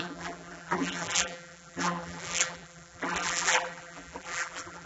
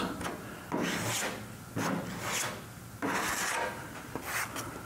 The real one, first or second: second